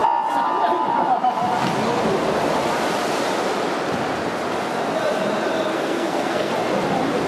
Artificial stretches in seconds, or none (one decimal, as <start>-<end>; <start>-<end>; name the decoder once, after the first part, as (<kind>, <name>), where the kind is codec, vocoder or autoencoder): 5.7-6.5 (codec, SNAC)